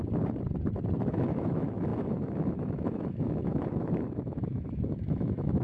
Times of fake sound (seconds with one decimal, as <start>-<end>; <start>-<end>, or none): 1.1-5.6